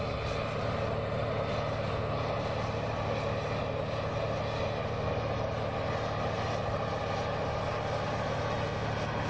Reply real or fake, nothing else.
real